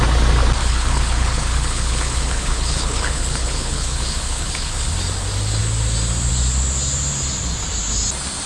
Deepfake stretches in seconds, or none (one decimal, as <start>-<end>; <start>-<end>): 0.6-4.9